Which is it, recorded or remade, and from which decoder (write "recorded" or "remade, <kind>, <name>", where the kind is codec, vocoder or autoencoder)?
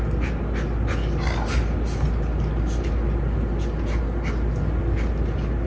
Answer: recorded